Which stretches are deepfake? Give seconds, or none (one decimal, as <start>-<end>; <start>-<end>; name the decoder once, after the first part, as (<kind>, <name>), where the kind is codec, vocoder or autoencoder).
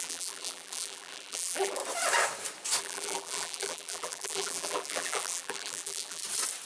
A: 0.0-1.8 (vocoder, BigVGAN v2); 2.8-6.2